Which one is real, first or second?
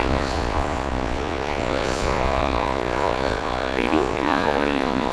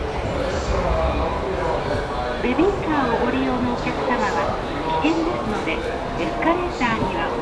second